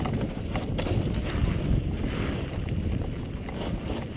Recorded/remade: recorded